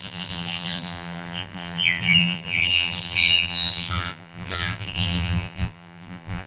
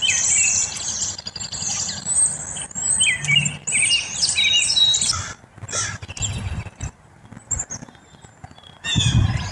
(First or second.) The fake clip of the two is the first